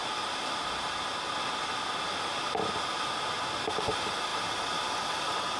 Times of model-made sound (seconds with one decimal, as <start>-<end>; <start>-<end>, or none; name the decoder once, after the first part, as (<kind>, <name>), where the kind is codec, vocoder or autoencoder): none